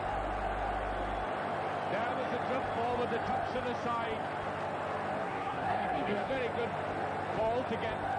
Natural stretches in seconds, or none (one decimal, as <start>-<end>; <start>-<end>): 0.0-5.2; 6.3-8.2